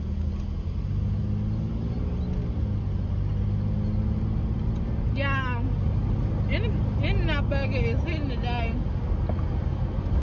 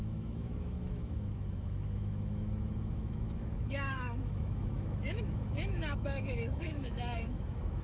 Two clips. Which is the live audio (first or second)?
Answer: first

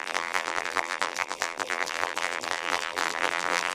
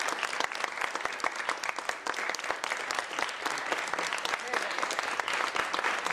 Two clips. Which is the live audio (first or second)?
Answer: second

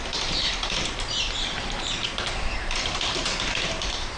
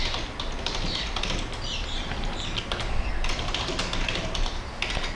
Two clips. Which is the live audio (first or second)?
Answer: second